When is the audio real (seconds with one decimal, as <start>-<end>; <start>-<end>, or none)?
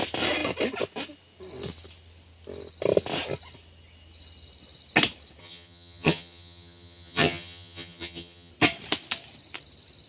0.0-5.4; 8.5-10.1